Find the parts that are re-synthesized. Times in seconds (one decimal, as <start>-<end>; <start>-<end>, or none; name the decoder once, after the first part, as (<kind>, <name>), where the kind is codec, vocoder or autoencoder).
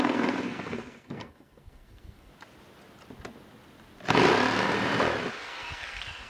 0.0-2.3 (codec, SNAC); 5.3-6.3